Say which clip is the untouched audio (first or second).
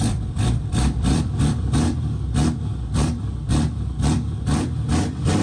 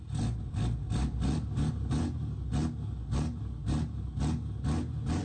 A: second